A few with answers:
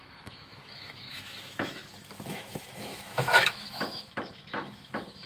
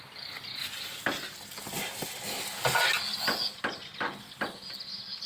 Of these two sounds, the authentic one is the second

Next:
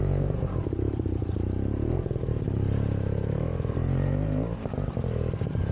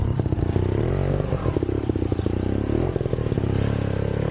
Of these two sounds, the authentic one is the second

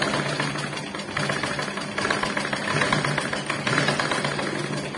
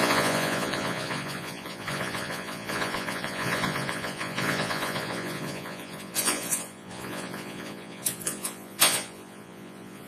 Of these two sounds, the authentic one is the first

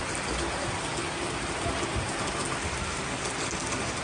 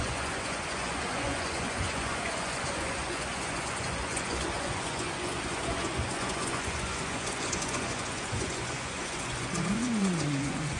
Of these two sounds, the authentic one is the first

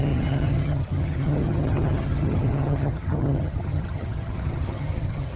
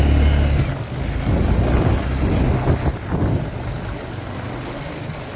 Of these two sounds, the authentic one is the second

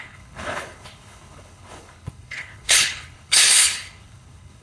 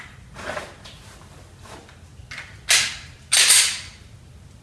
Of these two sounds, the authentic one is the second